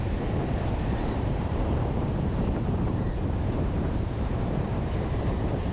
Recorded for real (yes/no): no